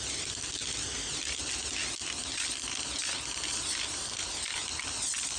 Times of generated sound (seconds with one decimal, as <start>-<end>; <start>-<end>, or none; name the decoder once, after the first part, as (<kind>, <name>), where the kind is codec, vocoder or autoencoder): none